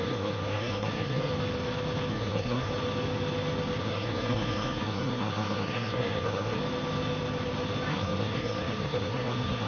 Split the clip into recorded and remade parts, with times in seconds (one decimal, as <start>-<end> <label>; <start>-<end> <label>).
0.0-1.3 remade; 1.3-2.1 recorded; 2.1-2.7 remade; 2.7-3.8 recorded; 3.8-6.6 remade; 6.6-7.9 recorded; 7.9-9.7 remade